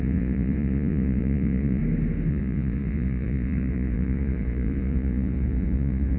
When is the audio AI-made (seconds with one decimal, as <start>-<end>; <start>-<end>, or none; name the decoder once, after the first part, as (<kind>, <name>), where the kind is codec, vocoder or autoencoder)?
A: 0.0-1.8 (vocoder, Vocos); 2.3-6.2